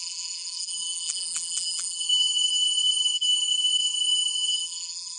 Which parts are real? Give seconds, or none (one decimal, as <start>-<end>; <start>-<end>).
none